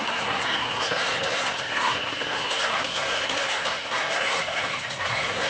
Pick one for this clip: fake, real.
fake